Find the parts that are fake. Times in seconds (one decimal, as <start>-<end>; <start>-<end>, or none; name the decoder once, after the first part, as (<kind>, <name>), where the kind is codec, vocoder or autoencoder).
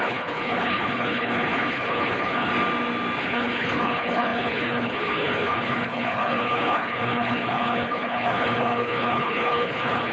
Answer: 0.0-2.5 (codec, HILCodec); 3.2-10.1